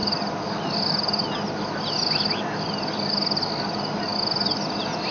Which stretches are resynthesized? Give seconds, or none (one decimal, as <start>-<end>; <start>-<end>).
none